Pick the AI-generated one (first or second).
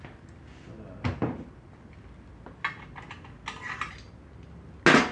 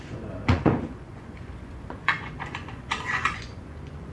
second